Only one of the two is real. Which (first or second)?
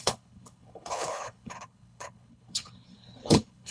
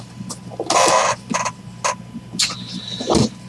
second